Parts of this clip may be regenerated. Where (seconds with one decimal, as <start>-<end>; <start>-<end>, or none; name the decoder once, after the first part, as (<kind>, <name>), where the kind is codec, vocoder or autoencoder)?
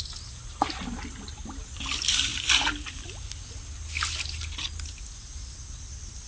none